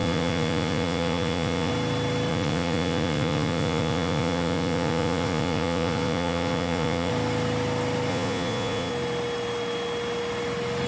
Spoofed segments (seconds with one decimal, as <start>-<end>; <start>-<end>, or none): 0.0-1.7; 2.3-7.1; 8.1-8.9